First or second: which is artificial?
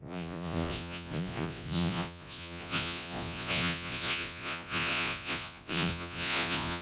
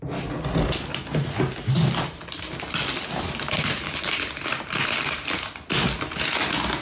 first